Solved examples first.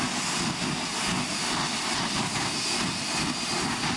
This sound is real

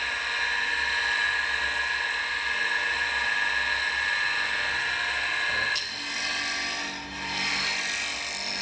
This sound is real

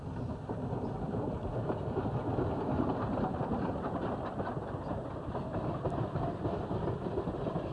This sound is real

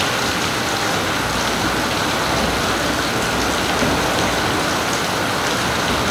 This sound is real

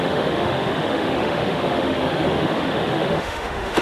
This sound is fake